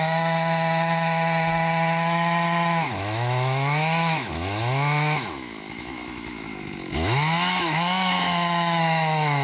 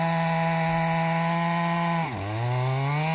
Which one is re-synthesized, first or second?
first